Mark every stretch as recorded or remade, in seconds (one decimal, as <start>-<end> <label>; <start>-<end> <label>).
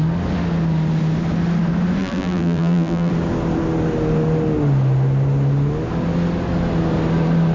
0.0-2.0 recorded; 2.0-3.1 remade; 3.1-7.5 recorded